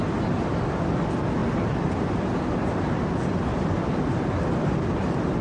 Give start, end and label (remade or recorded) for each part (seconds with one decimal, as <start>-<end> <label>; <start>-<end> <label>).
0.0-1.4 recorded; 1.4-4.6 remade; 4.6-5.4 recorded